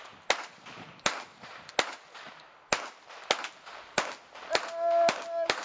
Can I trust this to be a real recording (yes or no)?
yes